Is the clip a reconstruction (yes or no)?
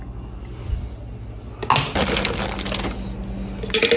no